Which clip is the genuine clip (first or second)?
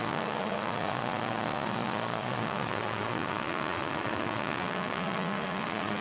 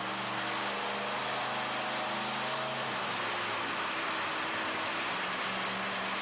second